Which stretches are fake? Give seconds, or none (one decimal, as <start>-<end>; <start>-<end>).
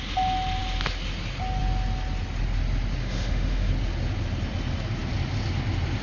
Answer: 3.0-3.7